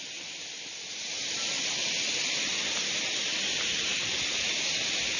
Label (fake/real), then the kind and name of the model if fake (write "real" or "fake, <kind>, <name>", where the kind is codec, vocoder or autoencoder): real